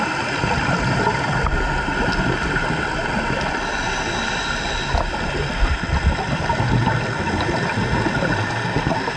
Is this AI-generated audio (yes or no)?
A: no